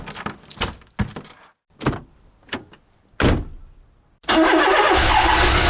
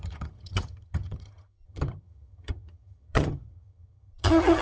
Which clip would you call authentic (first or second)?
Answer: first